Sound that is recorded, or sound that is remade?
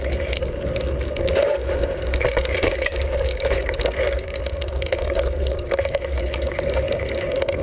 remade